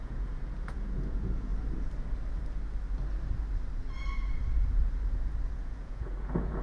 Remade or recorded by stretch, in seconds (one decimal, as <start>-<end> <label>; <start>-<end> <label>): 0.0-1.5 remade; 1.5-5.5 recorded; 5.5-6.6 remade